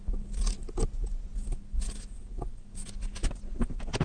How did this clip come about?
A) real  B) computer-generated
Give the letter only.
A